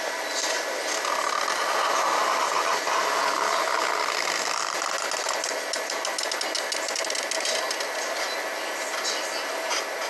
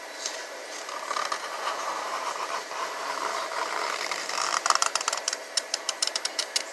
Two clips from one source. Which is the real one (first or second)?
first